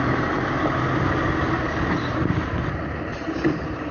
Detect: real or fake real